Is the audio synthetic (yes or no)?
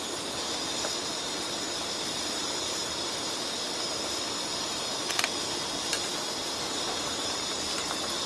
no